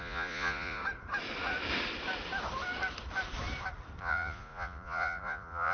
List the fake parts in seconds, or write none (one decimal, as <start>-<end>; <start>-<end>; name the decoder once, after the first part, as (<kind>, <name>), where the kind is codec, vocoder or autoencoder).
0.0-0.8 (vocoder, Vocos); 4.0-5.7